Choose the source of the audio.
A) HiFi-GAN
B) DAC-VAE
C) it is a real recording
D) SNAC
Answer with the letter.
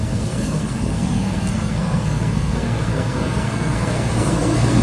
D